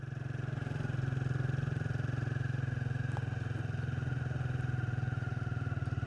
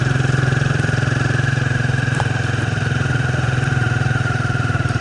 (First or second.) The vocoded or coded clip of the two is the second